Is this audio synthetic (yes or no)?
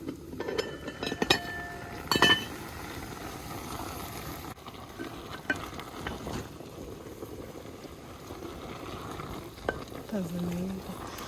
no